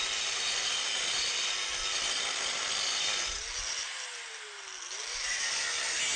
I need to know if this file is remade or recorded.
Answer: recorded